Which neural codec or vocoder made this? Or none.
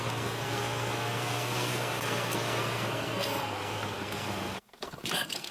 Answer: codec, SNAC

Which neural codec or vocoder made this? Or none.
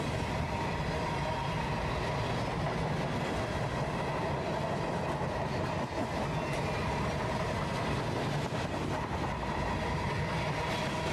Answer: none